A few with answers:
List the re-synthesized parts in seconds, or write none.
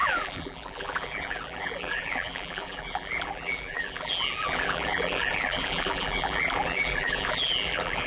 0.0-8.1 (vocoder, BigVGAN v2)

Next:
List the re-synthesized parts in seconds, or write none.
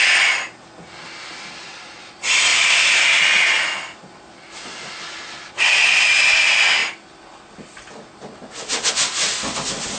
2.5-3.2 (vocoder, BigVGAN v2)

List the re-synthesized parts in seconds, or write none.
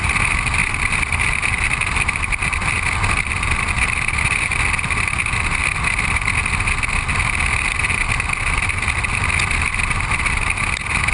0.0-4.5 (vocoder, BigVGAN v2); 9.4-11.1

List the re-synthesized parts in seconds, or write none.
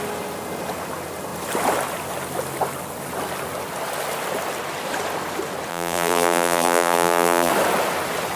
5.7-7.5 (vocoder, BigVGAN v2)